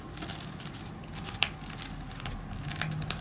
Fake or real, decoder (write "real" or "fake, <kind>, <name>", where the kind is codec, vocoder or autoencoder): real